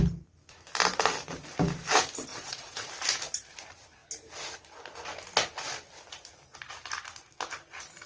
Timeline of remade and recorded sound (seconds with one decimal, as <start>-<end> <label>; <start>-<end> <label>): 0.0-2.3 recorded; 2.3-2.9 remade; 2.9-8.1 recorded